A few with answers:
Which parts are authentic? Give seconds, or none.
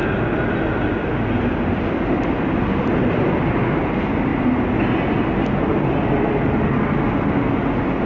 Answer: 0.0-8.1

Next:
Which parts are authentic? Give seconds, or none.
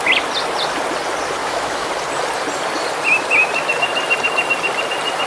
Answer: 0.0-1.4; 1.9-5.3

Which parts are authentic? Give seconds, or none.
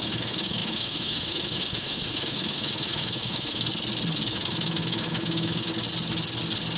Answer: 3.7-4.3; 5.7-6.8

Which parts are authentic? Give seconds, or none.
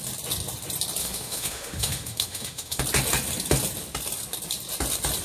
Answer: 0.0-1.0; 2.8-5.2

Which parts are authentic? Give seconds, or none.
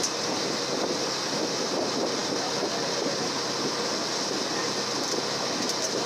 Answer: 0.0-6.1